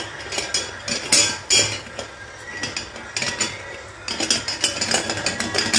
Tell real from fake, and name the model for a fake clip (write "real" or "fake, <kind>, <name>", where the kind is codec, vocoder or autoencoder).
real